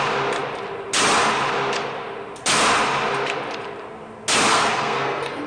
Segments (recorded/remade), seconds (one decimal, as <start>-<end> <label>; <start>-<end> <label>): 0.0-4.5 recorded; 4.5-5.5 remade